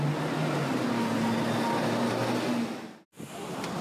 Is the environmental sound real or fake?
real